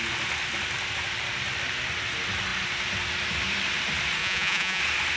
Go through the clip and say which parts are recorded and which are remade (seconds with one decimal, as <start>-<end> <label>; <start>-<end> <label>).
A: 0.0-4.2 recorded; 4.2-4.8 remade; 4.8-5.2 recorded